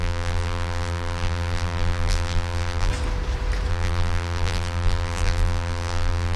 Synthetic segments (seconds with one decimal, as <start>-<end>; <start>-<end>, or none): 0.0-2.9; 3.7-6.4